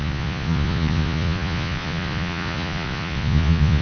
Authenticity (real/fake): fake